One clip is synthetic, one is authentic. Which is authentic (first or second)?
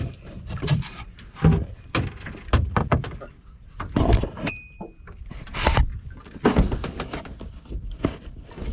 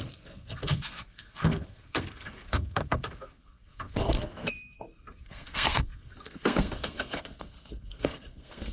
first